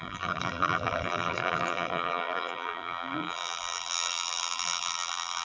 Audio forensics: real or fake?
fake